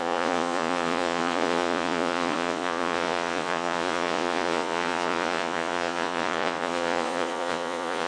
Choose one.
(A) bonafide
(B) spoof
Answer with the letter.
B